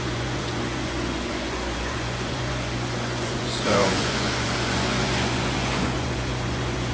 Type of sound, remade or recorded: remade